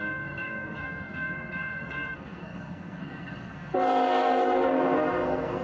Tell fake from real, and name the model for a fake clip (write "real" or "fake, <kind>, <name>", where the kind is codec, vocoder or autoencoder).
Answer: fake, codec, SNAC